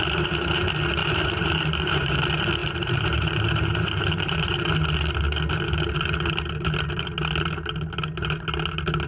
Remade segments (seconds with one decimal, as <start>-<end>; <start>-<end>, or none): 1.0-2.1; 2.6-4.6